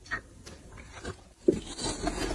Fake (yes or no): no